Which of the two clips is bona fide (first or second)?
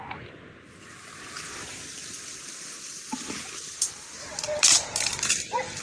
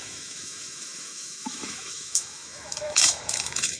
first